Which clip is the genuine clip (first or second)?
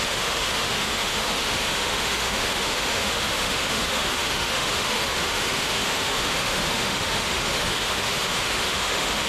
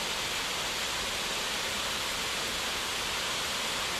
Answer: second